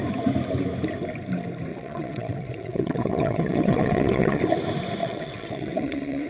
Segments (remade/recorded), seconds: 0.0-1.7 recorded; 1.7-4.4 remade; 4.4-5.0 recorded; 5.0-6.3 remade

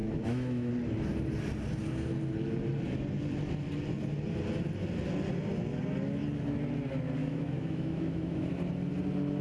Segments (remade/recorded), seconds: 0.0-0.7 remade; 0.7-7.2 recorded; 7.2-8.5 remade; 8.5-9.4 recorded